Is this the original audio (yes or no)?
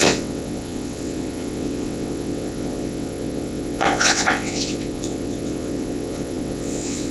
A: no